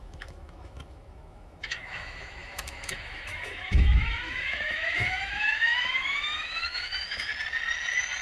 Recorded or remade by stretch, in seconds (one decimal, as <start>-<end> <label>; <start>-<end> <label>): 0.0-7.3 remade; 7.3-8.2 recorded